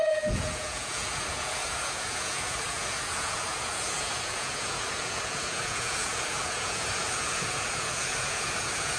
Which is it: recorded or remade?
remade